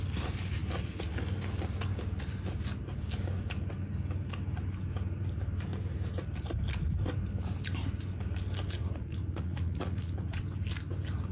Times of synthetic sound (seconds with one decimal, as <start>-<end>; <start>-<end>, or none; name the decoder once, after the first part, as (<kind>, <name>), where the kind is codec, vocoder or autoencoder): 8.8-10.4 (vocoder, Vocos)